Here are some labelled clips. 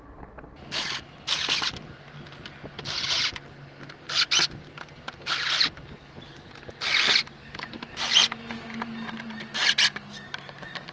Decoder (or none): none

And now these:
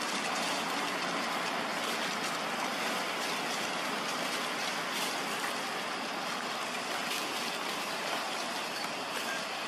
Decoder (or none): none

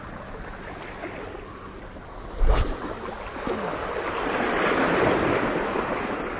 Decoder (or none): none